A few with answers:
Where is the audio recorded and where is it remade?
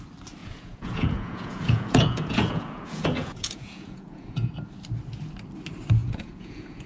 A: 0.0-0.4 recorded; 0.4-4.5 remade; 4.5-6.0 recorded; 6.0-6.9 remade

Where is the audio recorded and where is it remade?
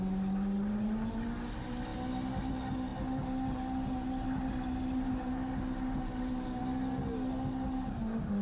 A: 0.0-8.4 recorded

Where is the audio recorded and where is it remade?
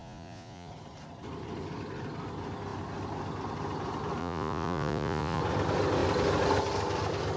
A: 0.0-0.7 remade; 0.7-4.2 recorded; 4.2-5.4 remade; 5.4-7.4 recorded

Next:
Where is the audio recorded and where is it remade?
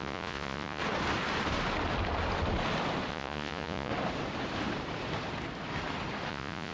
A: 0.0-0.8 remade; 0.8-3.1 recorded; 3.1-3.9 remade; 3.9-6.3 recorded; 6.3-6.7 remade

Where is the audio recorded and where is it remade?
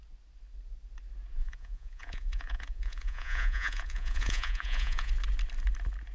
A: 0.0-1.4 recorded; 1.4-5.1 remade; 5.1-6.1 recorded